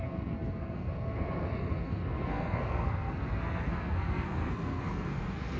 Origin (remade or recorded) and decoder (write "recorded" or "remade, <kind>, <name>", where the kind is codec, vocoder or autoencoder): remade, codec, SNAC